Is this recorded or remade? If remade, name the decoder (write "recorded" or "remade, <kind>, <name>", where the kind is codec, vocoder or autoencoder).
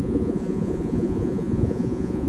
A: remade, vocoder, Vocos